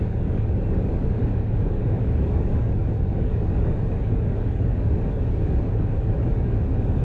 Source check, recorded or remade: remade